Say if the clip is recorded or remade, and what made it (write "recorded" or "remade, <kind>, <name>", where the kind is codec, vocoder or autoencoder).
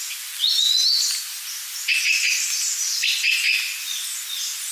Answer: recorded